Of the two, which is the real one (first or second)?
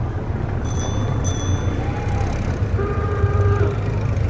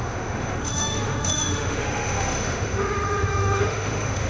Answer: first